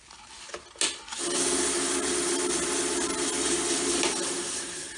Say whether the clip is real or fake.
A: real